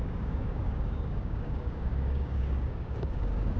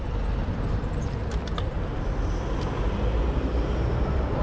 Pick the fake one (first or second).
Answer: first